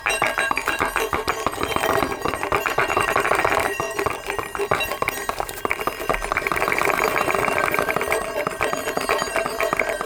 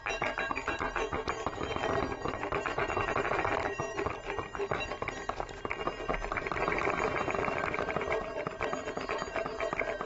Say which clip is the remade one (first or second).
first